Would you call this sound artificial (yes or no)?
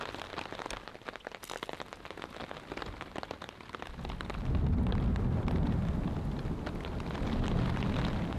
no